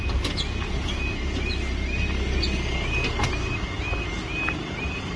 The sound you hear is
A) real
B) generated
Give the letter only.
A